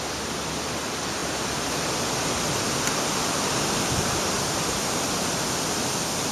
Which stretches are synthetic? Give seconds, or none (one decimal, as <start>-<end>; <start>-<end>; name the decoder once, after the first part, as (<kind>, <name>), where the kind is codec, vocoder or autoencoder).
none